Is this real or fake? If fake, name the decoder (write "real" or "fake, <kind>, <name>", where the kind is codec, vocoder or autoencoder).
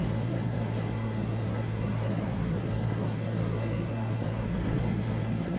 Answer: fake, codec, SNAC